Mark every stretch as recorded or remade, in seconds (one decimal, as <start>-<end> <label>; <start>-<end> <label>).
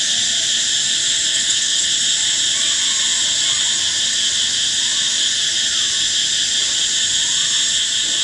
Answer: 0.0-1.3 recorded; 1.3-1.9 remade; 1.9-8.2 recorded